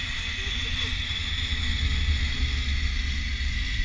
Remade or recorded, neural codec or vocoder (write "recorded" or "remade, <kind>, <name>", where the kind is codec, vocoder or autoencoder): recorded